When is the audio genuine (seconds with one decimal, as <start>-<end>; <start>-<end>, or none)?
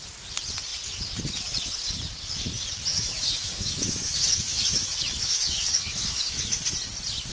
0.0-2.9; 6.6-7.3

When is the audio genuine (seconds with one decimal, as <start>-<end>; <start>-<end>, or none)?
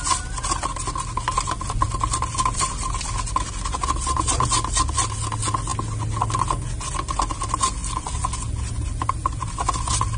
0.0-10.2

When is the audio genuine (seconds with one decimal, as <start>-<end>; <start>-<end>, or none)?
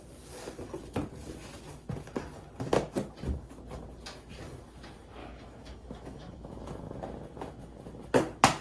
0.0-5.2; 6.6-8.6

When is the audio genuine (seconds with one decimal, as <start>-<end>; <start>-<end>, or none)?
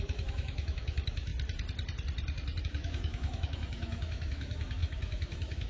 1.3-2.6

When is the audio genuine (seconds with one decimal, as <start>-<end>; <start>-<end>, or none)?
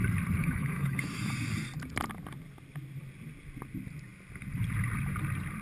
0.0-0.4; 1.3-5.6